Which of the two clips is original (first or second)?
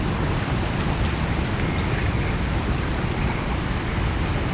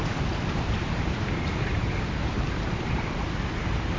first